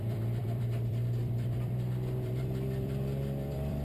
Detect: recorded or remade remade